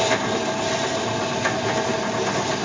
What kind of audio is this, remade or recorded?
recorded